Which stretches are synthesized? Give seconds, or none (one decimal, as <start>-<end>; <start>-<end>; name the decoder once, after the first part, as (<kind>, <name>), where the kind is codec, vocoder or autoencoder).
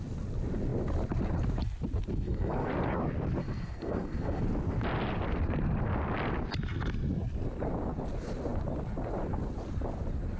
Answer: 2.1-2.7 (codec, SNAC); 3.4-4.4